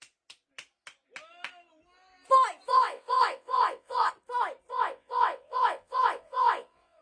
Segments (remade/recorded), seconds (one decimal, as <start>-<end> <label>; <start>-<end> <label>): 0.0-2.7 recorded; 2.7-4.1 remade; 4.1-4.7 recorded; 4.7-7.0 remade